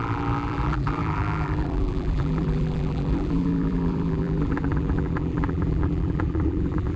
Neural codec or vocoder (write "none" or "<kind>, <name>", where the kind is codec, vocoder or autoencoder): vocoder, BigVGAN v2